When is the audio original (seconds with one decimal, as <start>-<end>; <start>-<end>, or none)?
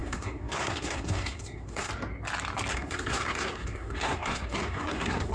1.9-2.7